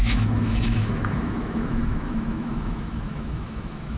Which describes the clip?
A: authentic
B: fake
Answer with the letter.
B